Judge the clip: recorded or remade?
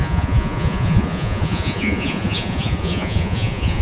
remade